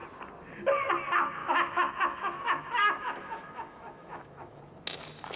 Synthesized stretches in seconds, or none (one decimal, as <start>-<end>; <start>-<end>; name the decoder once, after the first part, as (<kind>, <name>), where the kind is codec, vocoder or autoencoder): 1.4-4.6 (autoencoder, DAC-VAE)